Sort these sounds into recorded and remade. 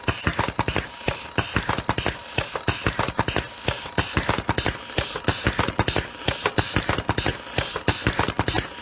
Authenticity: recorded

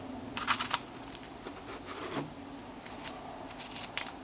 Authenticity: remade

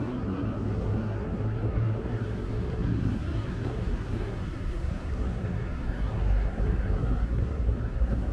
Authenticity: remade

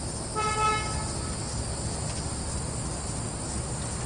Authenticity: recorded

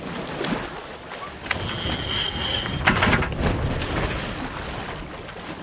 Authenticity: recorded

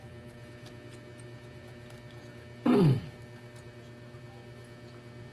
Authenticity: recorded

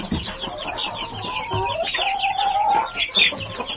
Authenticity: recorded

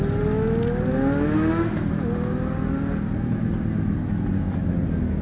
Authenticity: recorded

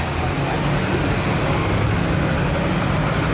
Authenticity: recorded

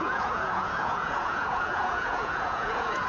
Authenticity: remade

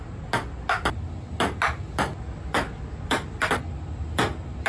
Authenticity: recorded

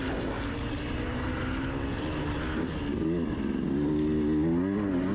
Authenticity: recorded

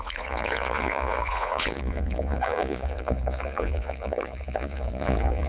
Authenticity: remade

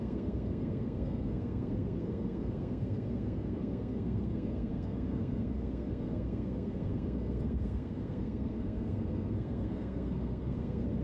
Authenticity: remade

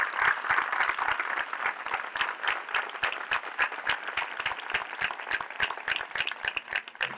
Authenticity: recorded